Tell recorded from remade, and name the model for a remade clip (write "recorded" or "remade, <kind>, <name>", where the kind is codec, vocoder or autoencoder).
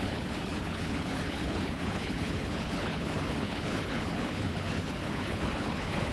remade, codec, HILCodec